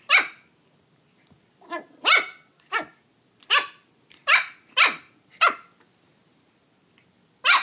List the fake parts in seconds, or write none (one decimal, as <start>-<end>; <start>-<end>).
none